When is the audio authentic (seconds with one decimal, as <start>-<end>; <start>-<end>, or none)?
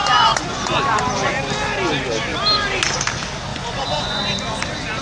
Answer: 1.0-3.5; 4.2-5.0